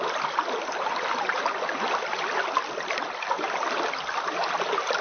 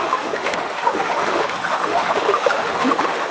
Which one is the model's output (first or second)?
second